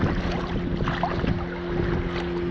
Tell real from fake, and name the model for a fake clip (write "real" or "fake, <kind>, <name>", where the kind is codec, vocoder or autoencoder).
real